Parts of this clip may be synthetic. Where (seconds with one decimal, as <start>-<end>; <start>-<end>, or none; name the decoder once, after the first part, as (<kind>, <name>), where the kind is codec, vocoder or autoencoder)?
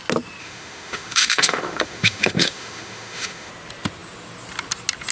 0.4-3.5 (autoencoder, DAC-VAE)